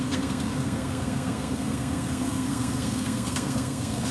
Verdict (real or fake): fake